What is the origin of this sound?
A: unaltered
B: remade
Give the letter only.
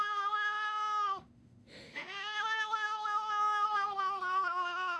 B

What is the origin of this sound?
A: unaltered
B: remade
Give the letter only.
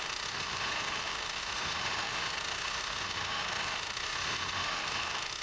B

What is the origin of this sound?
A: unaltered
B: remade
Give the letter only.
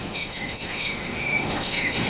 B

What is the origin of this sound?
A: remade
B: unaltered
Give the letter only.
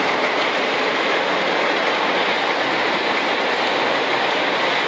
B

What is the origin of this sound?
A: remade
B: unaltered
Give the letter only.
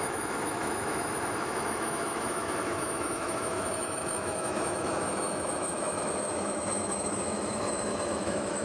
A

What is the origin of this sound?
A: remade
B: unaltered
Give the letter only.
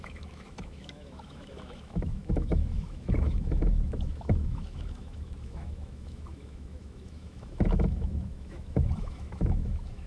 A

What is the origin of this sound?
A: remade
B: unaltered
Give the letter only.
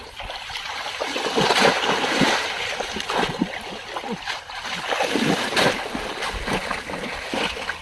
B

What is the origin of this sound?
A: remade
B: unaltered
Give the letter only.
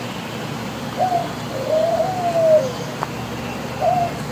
B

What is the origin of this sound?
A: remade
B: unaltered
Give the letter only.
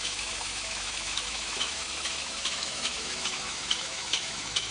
A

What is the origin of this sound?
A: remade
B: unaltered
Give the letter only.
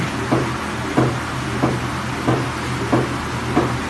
B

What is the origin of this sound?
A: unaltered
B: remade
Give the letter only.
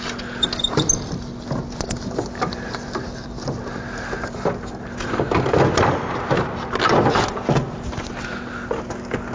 A